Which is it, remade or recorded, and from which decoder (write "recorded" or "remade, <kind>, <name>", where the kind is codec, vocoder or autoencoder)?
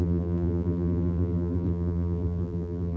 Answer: remade, vocoder, BigVGAN v2